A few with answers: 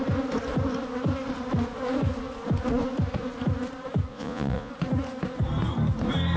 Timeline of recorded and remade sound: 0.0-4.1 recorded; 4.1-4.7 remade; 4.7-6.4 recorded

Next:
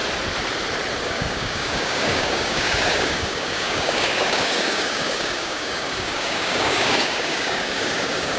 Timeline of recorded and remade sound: 0.0-1.0 recorded; 1.0-8.4 remade